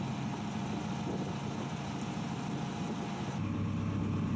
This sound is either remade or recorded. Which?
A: recorded